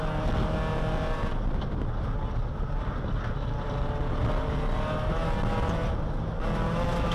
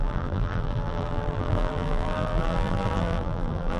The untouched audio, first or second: first